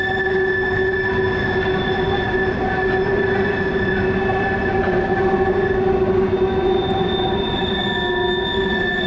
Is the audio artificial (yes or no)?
no